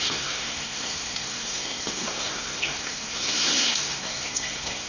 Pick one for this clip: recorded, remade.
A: remade